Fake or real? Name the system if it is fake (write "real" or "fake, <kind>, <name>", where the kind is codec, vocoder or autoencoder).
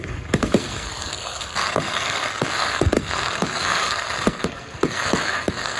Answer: fake, codec, SNAC